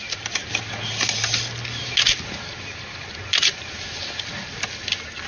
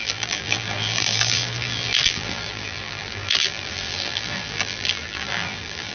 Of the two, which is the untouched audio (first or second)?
first